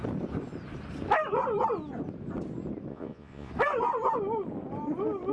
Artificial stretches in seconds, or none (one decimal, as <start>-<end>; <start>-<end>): 2.9-3.5